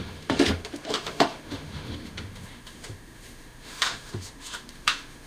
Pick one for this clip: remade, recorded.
remade